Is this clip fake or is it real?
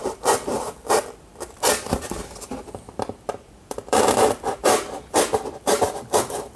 fake